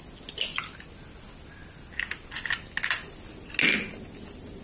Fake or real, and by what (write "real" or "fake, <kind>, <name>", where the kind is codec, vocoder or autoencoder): real